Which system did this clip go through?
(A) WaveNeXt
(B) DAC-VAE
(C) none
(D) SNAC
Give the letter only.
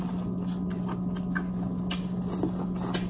C